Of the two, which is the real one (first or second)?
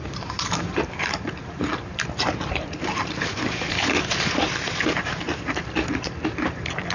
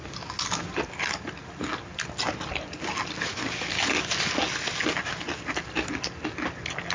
second